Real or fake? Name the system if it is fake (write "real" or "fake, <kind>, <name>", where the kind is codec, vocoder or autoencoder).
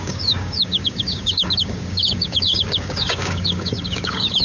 fake, codec, DAC